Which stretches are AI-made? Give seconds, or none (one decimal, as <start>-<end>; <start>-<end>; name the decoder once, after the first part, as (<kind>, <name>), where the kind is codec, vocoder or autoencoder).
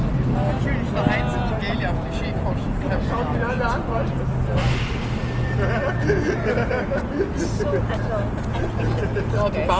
none